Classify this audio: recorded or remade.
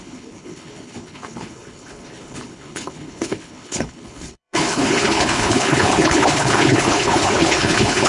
remade